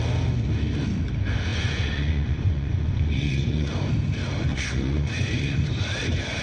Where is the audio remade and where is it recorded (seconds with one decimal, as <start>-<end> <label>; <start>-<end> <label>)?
0.0-1.5 recorded; 1.5-3.7 remade; 3.7-4.5 recorded; 4.5-5.7 remade; 5.7-6.4 recorded